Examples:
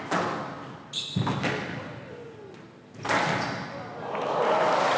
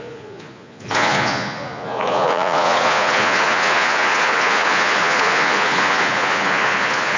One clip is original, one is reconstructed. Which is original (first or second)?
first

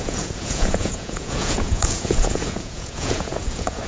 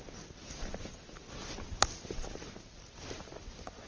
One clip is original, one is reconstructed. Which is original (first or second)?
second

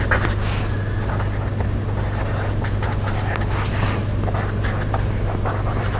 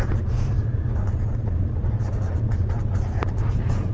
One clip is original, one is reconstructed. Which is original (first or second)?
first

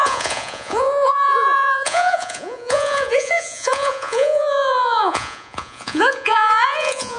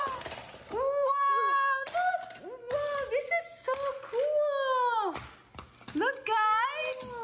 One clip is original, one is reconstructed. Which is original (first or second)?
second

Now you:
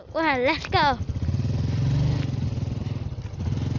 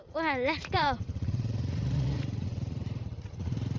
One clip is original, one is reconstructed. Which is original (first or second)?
first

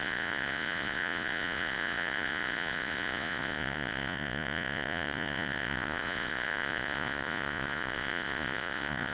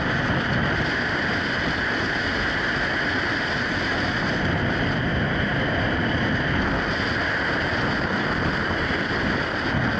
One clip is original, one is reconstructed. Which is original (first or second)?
second